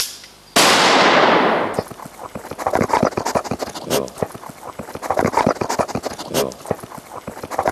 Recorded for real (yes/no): yes